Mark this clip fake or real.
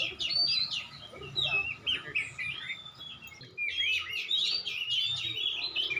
real